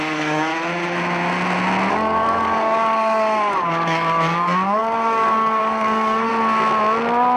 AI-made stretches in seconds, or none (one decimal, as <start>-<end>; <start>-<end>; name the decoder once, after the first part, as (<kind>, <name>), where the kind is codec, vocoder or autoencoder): 0.0-0.5 (codec, DAC); 1.9-6.3